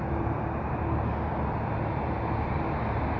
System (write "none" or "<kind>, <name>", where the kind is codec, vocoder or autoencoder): none